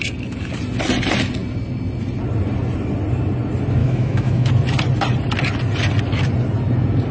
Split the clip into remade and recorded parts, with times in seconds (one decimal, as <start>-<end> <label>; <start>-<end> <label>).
0.0-3.8 recorded; 3.8-4.5 remade; 4.5-7.1 recorded